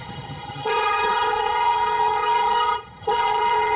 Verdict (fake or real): fake